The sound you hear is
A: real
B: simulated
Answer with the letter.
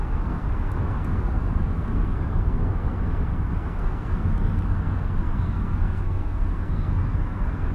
B